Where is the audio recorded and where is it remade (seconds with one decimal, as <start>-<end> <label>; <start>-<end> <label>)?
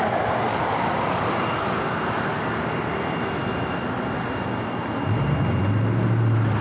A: 0.0-0.5 recorded; 0.5-1.3 remade; 1.3-2.3 recorded; 2.3-2.9 remade; 2.9-6.6 recorded